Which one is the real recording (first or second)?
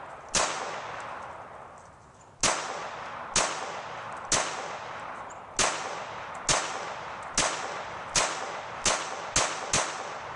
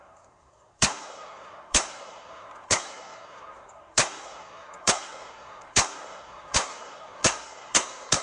first